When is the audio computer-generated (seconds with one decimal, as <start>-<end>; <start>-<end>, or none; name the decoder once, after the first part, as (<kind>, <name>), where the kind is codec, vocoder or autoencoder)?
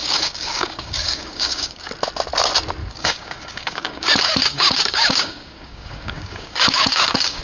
0.0-1.9 (codec, DAC); 2.8-7.4